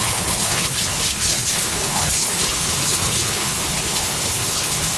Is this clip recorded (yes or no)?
no